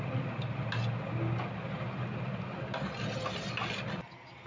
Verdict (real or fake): real